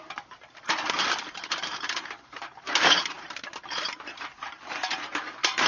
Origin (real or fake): fake